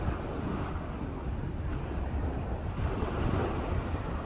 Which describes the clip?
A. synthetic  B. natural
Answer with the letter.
B